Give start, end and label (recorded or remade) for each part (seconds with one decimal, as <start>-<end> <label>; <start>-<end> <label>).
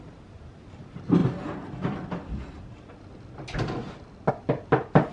0.0-5.1 recorded